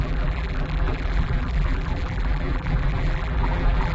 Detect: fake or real fake